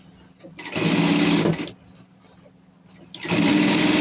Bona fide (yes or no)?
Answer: yes